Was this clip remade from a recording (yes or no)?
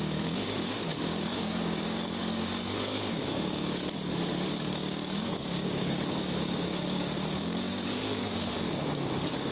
yes